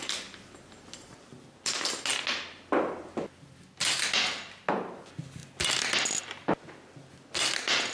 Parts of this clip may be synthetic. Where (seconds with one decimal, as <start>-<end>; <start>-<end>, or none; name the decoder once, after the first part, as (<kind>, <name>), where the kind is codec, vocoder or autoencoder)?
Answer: none

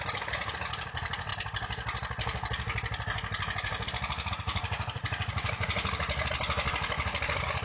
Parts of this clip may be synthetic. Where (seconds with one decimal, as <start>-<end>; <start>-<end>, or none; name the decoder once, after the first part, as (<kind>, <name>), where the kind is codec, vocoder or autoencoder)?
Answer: none

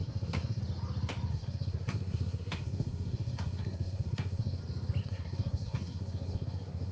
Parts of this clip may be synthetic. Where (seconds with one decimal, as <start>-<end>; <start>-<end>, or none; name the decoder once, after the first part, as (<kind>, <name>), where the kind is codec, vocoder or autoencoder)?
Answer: 0.0-0.6 (codec, SNAC); 1.3-4.6; 5.0-6.9

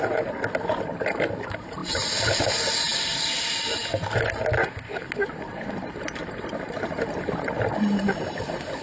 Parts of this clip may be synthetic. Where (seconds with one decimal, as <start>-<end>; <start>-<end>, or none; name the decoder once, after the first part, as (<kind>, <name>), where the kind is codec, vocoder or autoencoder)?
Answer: 5.2-6.6 (vocoder, BigVGAN v2)